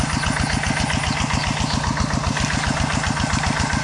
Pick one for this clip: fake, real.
real